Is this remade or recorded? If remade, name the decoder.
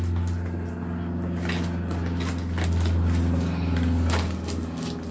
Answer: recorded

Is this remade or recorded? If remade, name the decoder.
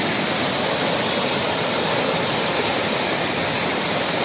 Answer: recorded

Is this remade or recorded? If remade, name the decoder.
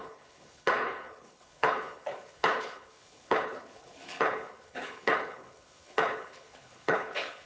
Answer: remade, codec, HILCodec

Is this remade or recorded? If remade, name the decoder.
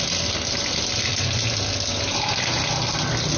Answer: recorded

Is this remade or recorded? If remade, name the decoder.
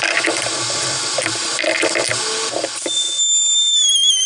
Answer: recorded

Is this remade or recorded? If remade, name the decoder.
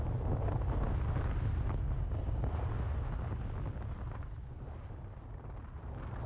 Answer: recorded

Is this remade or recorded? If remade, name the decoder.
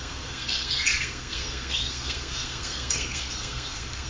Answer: remade, codec, SNAC